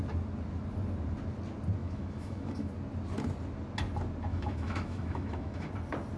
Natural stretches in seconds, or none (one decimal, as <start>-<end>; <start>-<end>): 0.0-1.8; 2.7-4.3; 5.7-6.2